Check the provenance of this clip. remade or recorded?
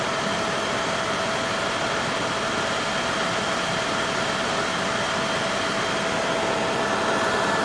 recorded